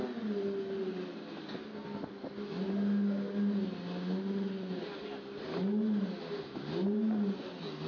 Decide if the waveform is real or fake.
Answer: real